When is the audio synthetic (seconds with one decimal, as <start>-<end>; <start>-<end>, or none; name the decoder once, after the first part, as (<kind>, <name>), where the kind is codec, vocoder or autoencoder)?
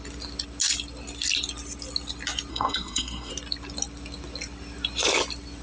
2.5-3.3 (codec, SNAC)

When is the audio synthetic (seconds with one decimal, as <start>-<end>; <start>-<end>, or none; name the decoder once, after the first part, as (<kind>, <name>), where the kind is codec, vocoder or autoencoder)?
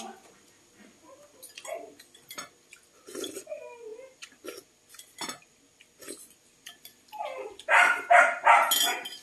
none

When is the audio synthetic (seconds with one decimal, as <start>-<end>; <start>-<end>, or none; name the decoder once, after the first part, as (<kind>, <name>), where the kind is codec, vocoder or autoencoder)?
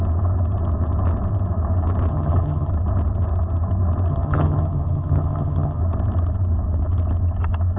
2.1-2.7 (vocoder, HiFi-GAN); 4.1-5.8